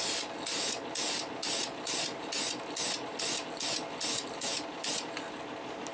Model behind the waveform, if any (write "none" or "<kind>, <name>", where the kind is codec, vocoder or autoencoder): none